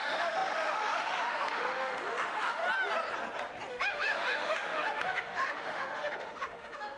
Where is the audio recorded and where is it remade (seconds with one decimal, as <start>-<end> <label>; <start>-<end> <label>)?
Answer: 0.0-2.6 remade; 2.6-3.7 recorded; 3.7-7.0 remade